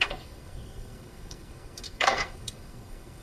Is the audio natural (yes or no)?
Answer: no